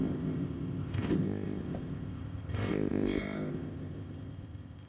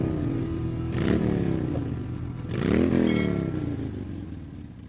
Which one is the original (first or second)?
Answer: second